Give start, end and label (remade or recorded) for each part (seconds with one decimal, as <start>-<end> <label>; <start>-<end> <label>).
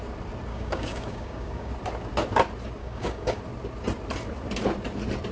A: 0.0-0.5 recorded; 0.5-1.7 remade; 1.7-2.8 recorded; 2.8-3.4 remade; 3.4-5.3 recorded